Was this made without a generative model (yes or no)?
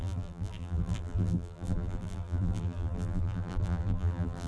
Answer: no